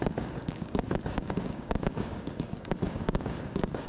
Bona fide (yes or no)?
no